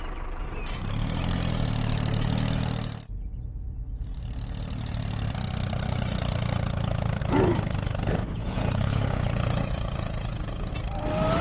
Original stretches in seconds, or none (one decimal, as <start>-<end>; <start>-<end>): 0.0-8.4; 10.7-11.4